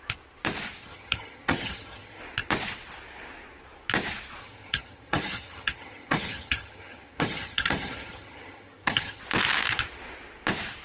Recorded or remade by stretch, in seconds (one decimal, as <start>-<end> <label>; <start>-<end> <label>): 0.0-0.8 recorded; 0.8-2.2 remade; 2.2-4.4 recorded; 4.4-9.2 remade; 9.2-10.8 recorded